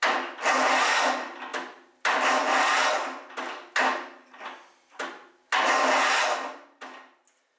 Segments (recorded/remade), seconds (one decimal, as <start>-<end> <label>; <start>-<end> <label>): 0.0-7.6 recorded